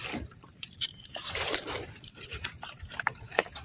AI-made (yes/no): yes